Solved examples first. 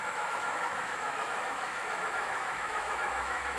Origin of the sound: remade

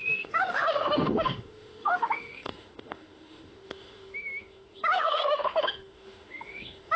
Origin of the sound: remade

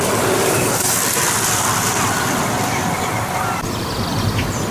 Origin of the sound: recorded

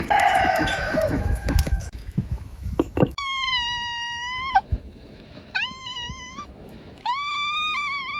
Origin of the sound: remade